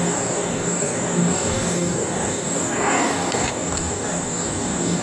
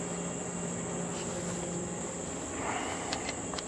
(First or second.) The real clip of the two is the second